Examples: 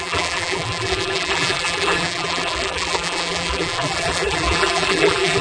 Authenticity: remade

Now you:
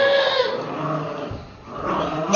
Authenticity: remade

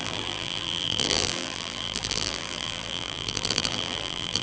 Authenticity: remade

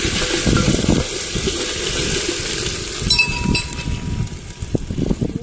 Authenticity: recorded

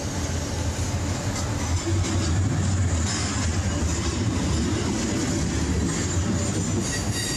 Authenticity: recorded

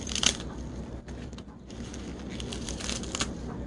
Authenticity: recorded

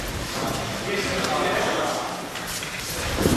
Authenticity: recorded